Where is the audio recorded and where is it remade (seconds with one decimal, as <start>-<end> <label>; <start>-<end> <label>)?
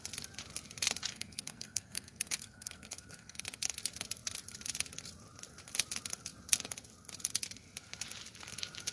0.0-1.1 recorded; 1.1-3.4 remade; 3.4-8.9 recorded